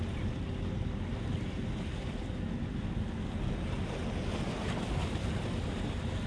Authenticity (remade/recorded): recorded